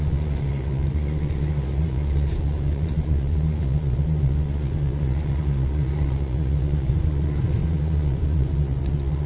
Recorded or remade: remade